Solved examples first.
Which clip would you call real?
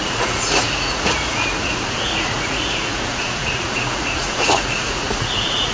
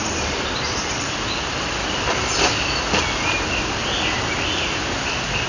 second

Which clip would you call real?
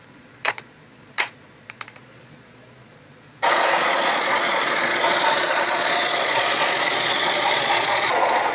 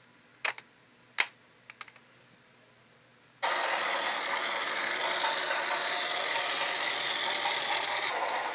second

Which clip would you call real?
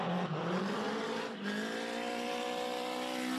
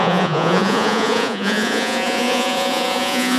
first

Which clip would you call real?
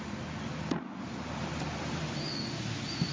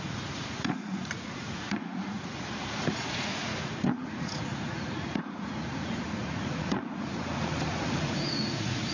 first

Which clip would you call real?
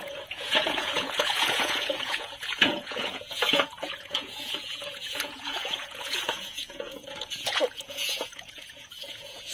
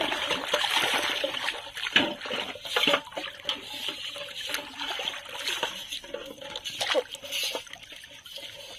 second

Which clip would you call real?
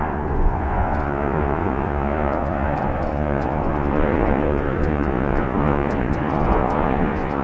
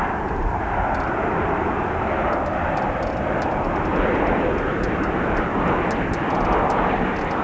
second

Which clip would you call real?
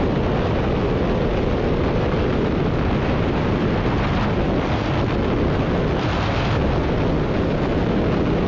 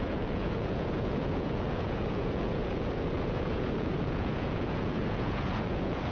first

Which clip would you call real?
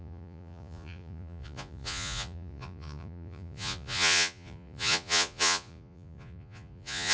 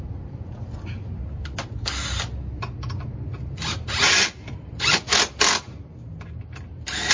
second